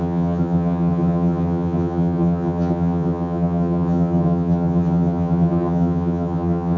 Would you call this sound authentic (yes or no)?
no